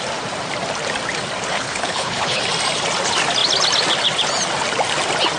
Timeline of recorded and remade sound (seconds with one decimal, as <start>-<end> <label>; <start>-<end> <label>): 0.0-1.5 recorded; 1.5-2.4 remade; 2.4-5.4 recorded